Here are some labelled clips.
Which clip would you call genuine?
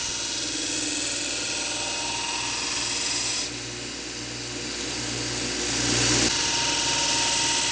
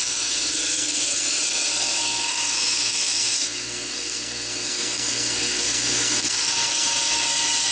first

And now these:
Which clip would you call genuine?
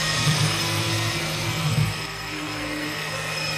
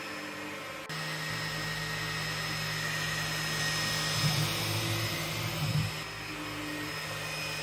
second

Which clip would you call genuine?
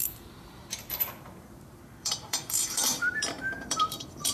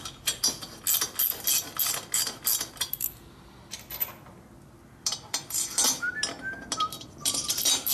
second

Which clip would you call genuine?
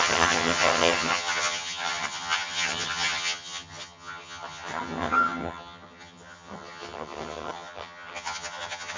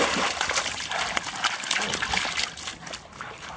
second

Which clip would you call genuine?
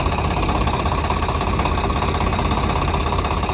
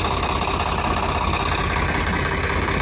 second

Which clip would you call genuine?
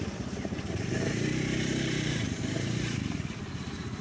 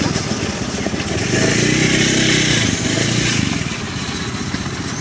second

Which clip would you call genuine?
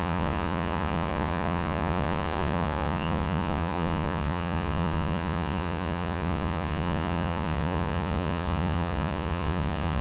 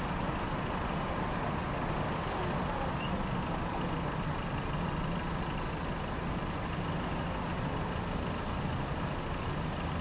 second